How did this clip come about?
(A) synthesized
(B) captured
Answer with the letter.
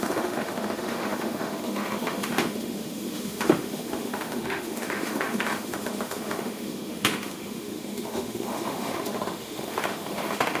A